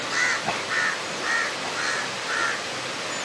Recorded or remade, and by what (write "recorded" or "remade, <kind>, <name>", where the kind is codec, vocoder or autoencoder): recorded